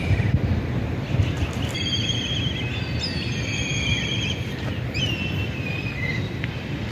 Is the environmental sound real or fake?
real